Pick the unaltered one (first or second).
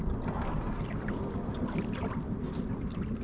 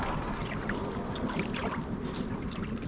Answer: first